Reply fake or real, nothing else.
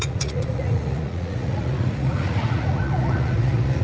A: fake